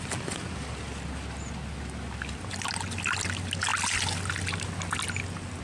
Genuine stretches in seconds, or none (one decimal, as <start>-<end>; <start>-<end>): 0.0-5.6

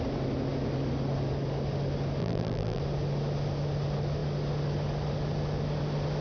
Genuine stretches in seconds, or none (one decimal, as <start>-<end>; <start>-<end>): 0.0-2.2; 2.8-6.2

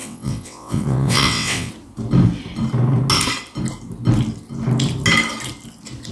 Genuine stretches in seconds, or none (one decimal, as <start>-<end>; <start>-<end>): 1.7-6.1

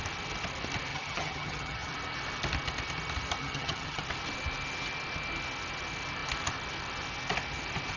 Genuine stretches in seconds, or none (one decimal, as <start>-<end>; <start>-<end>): 0.0-0.9; 1.9-3.4; 4.0-8.0

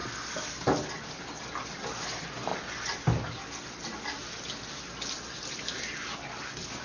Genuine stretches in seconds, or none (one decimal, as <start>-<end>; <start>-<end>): 0.0-6.8

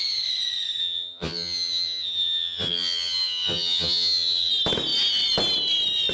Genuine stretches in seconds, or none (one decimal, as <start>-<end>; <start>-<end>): 0.0-0.8; 4.5-6.1

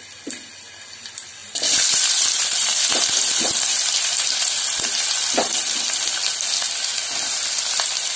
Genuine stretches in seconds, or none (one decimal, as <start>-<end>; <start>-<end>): 0.0-1.4; 5.8-8.2